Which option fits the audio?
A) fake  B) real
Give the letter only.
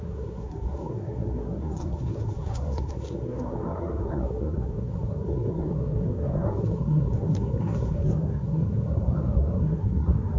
A